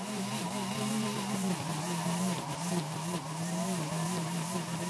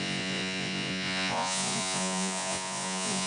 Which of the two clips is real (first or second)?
first